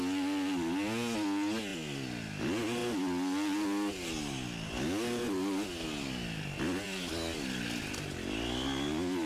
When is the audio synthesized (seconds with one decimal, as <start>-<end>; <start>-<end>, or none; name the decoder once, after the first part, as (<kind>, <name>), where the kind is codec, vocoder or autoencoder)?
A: none